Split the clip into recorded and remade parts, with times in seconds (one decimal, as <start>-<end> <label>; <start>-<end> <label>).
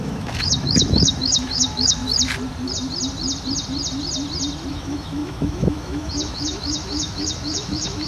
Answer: 0.0-2.0 remade; 2.0-4.7 recorded; 4.7-8.1 remade